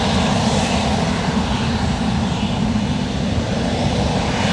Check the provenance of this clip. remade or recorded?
recorded